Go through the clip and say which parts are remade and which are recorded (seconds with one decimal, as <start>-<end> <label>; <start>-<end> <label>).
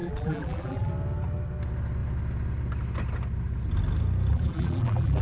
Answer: 0.0-0.9 remade; 0.9-4.3 recorded; 4.3-5.2 remade